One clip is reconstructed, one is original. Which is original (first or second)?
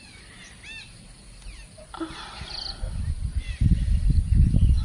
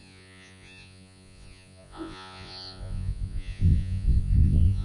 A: first